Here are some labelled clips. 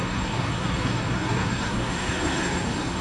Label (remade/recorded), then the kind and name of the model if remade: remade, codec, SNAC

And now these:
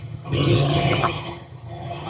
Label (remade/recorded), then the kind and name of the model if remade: remade, vocoder, HiFi-GAN